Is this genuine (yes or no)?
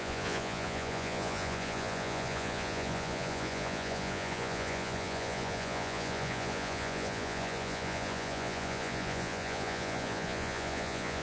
no